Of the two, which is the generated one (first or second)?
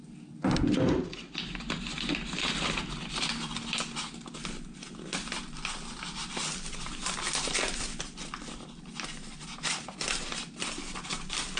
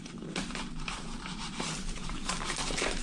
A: second